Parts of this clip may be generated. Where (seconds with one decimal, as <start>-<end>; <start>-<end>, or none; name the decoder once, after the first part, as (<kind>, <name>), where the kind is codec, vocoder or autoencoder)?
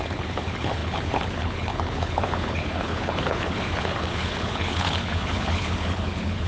0.0-6.5 (codec, HILCodec)